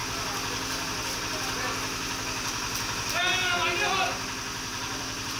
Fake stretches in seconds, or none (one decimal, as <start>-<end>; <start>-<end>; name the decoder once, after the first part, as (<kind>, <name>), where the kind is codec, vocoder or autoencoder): 4.7-5.4 (vocoder, BigVGAN v2)